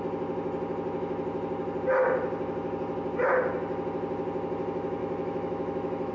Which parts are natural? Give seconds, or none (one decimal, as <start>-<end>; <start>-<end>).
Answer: 0.0-5.0